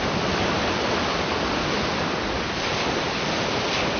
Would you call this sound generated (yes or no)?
no